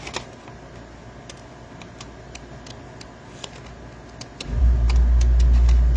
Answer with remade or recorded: recorded